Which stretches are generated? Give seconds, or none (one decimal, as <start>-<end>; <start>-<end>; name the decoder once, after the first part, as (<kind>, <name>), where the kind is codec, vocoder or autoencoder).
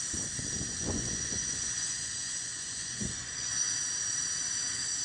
0.7-3.7 (vocoder, Vocos)